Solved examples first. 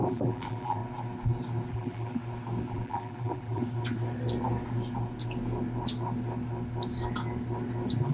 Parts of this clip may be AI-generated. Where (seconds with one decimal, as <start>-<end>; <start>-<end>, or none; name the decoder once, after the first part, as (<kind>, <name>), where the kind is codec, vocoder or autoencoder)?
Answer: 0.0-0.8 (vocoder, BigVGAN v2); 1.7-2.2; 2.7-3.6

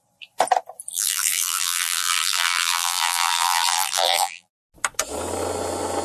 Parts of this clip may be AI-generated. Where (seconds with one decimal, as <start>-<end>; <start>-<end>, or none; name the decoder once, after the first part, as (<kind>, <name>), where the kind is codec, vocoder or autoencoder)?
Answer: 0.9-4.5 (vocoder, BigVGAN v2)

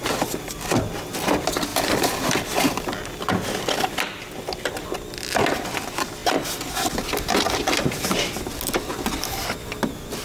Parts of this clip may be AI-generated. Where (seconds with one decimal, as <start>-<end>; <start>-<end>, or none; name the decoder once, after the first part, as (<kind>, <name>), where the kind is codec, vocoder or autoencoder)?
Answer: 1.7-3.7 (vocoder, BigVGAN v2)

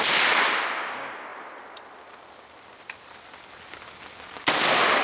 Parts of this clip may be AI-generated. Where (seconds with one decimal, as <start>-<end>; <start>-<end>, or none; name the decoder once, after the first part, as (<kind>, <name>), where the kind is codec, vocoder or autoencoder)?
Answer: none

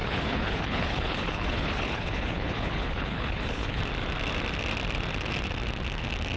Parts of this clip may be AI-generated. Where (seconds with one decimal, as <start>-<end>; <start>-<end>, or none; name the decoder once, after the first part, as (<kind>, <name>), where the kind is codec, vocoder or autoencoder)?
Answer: 0.0-3.8 (codec, HILCodec)

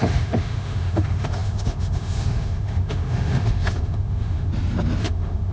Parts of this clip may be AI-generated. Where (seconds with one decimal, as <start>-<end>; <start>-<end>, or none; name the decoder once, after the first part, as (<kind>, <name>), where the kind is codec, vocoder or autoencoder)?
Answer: 0.0-4.5 (autoencoder, DAC-VAE); 5.0-5.5

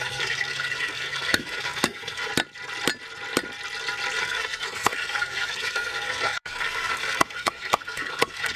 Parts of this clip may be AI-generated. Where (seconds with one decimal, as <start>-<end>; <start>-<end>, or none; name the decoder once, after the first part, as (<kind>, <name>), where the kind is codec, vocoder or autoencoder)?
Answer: 0.0-2.3 (codec, SNAC); 4.2-8.6